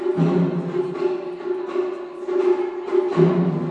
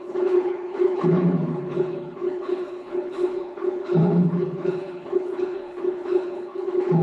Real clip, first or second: first